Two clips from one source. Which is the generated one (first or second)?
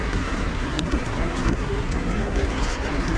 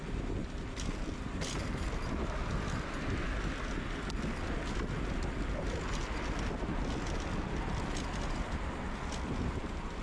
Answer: first